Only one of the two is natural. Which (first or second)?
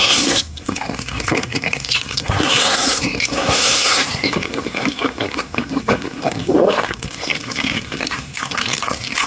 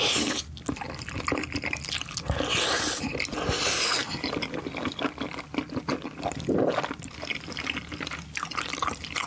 second